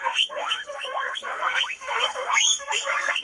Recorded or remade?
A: remade